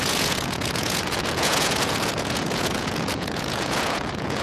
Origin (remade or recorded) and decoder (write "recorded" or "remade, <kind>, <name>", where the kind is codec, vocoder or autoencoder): remade, vocoder, Vocos